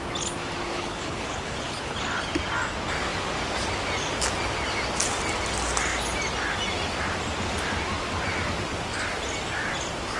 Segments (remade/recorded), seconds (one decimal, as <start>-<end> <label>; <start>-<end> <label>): 0.0-0.7 recorded; 0.7-2.0 remade; 2.0-10.2 recorded